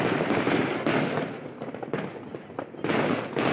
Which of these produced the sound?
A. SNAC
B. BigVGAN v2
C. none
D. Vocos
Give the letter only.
C